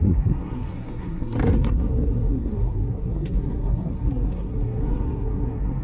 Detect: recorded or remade remade